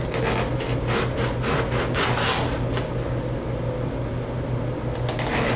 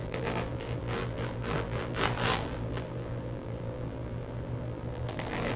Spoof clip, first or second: second